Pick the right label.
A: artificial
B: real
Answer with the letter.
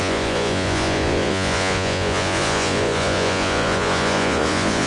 A